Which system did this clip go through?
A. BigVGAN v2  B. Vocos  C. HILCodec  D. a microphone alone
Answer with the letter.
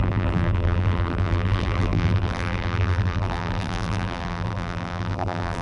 A